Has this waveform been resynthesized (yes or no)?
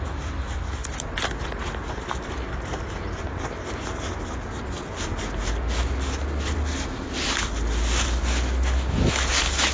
no